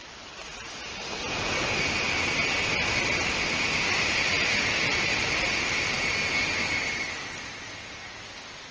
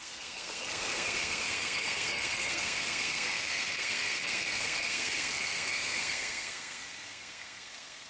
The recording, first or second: first